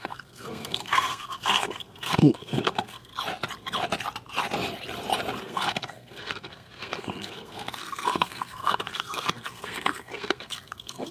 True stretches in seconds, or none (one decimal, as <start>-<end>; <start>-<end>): 3.1-5.4